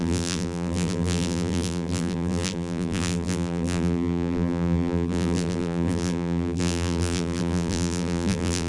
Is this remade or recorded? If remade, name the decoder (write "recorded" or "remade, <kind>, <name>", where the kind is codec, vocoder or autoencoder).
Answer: remade, vocoder, BigVGAN v2